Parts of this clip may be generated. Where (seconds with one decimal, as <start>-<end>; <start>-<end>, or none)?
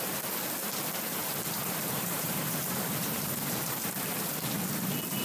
1.2-4.3